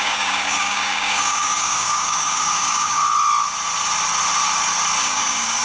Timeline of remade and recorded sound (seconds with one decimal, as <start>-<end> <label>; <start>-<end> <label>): 0.0-3.0 remade; 3.0-5.0 recorded; 5.0-5.6 remade